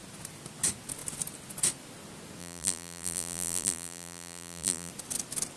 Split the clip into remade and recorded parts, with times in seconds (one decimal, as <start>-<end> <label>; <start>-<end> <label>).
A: 0.0-2.4 recorded; 2.4-4.9 remade; 4.9-5.6 recorded